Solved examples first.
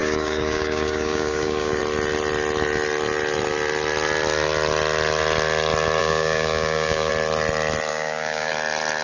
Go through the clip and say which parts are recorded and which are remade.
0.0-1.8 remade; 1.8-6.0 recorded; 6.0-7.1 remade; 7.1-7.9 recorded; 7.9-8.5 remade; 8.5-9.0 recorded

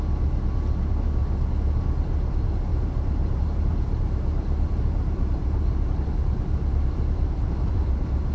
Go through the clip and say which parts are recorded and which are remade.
0.0-2.7 recorded; 2.7-7.7 remade; 7.7-8.3 recorded